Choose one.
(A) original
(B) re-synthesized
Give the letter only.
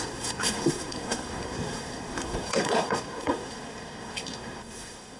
B